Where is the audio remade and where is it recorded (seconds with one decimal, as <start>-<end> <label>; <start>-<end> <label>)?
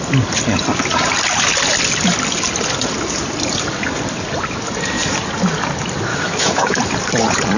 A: 0.0-6.1 recorded; 6.1-6.8 remade; 6.8-7.6 recorded